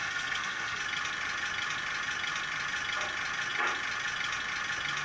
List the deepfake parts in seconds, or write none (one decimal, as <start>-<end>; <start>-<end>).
0.0-0.8